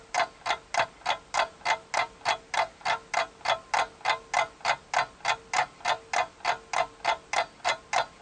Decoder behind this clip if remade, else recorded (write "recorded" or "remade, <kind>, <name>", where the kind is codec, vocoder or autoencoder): recorded